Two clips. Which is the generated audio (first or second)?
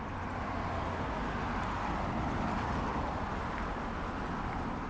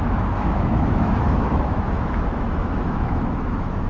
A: second